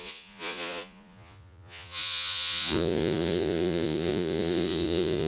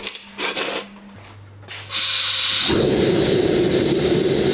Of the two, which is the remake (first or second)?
first